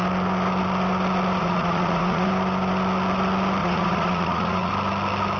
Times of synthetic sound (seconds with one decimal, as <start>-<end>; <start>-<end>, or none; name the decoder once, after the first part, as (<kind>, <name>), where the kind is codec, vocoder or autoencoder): 1.4-2.3 (vocoder, Vocos); 3.6-4.7